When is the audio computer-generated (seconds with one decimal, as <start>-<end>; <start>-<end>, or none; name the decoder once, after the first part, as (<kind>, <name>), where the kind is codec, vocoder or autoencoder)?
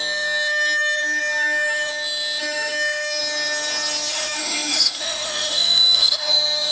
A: 0.0-1.9 (autoencoder, DAC-VAE); 2.4-3.2; 4.1-6.7